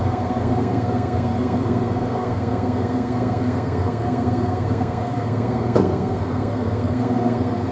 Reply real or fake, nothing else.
fake